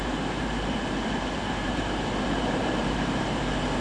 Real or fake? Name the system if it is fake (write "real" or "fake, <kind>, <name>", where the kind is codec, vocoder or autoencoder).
fake, vocoder, BigVGAN v2